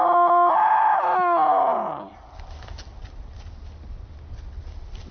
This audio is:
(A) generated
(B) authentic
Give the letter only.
B